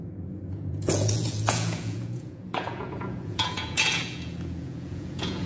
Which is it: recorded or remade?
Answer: remade